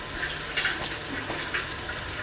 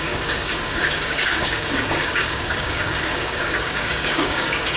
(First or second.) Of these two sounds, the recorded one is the first